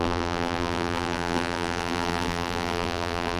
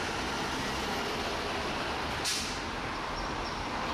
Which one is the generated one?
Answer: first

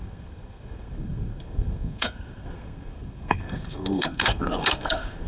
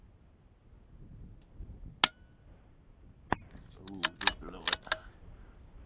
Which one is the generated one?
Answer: first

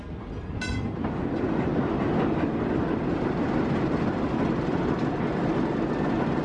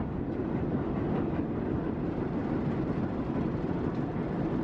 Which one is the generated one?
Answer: second